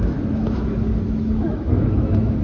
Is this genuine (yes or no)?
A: no